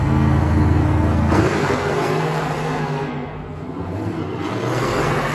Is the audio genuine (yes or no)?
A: no